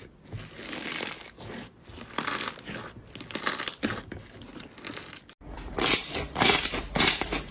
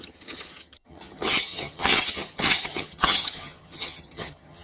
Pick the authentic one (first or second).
first